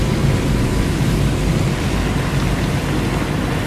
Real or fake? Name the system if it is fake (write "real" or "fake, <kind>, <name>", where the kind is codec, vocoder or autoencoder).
real